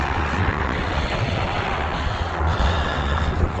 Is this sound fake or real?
fake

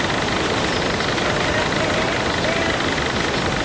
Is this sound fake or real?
real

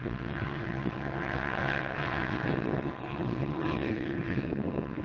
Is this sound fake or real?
fake